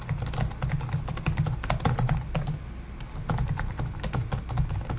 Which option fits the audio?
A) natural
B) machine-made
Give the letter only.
A